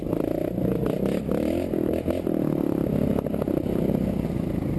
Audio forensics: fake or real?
real